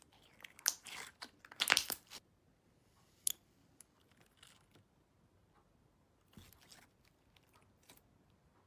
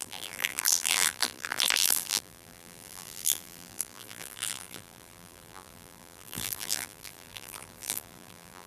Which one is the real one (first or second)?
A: first